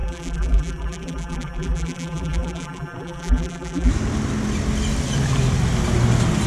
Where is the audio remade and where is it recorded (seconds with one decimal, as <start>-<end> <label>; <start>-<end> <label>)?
0.0-3.9 remade; 3.9-6.5 recorded